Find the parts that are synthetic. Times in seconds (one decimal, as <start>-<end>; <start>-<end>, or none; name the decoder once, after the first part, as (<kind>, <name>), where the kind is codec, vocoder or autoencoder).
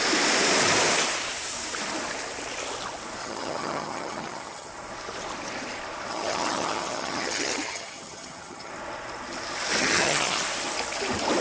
3.2-4.7 (vocoder, HiFi-GAN); 6.1-8.7; 9.8-10.4